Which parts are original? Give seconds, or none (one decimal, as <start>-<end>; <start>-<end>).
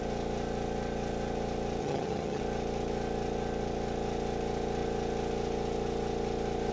0.0-1.8; 2.4-6.7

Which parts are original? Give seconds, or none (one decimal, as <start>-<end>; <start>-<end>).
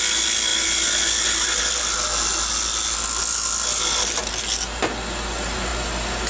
0.0-6.3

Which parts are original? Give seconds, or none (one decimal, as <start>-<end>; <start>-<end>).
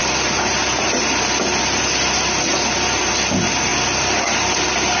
0.0-5.0